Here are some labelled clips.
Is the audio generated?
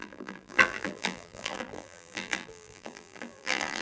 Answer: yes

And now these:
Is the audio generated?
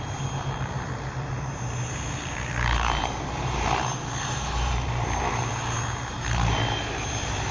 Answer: yes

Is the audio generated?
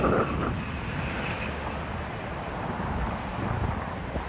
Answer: no